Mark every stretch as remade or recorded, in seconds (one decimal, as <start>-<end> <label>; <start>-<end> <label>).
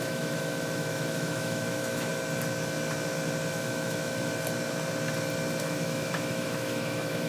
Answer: 0.0-2.1 remade; 2.1-3.5 recorded; 3.5-4.3 remade; 4.3-5.6 recorded; 5.6-7.3 remade